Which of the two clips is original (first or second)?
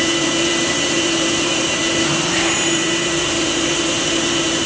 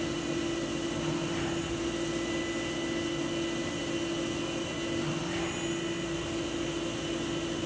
second